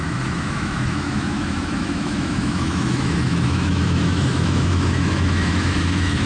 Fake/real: fake